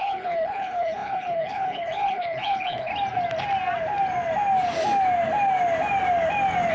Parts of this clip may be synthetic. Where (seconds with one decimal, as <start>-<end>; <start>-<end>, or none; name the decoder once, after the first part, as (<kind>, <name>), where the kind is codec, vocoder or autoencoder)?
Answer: 0.0-2.9 (codec, HILCodec)